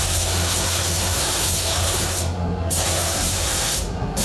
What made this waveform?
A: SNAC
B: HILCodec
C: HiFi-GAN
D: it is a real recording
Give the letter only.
A